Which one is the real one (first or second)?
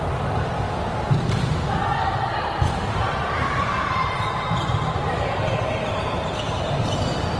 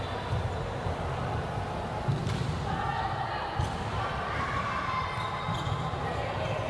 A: second